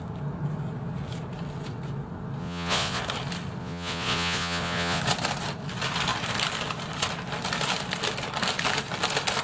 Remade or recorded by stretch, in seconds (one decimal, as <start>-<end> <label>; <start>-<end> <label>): 0.0-2.4 recorded; 2.4-3.0 remade; 3.0-3.6 recorded; 3.6-5.0 remade; 5.0-9.4 recorded